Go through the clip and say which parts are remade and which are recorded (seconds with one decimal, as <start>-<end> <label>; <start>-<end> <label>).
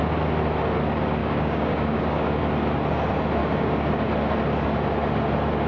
0.0-1.2 recorded; 1.2-2.4 remade; 2.4-3.4 recorded; 3.4-3.9 remade; 3.9-5.7 recorded